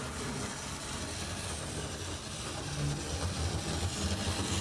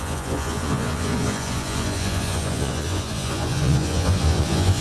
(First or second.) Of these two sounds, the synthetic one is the second